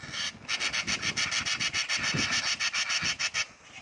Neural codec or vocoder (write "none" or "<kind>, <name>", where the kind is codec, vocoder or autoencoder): none